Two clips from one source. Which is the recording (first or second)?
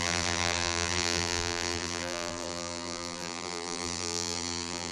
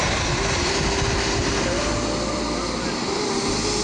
second